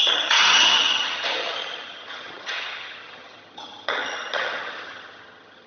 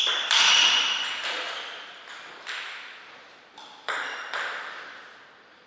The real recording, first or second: second